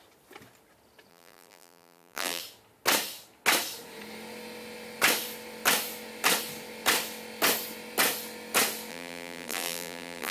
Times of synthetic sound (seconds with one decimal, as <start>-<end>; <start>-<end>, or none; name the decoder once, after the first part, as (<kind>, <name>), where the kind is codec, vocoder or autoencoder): 1.1-2.4 (vocoder, BigVGAN v2); 8.9-10.3